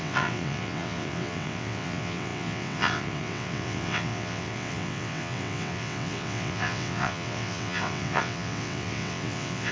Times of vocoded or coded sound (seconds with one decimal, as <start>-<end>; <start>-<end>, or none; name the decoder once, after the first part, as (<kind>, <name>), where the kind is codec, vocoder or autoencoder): 0.0-9.7 (vocoder, WaveNeXt)